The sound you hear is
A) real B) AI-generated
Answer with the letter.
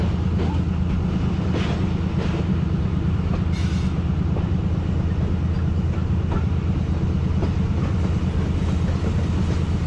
A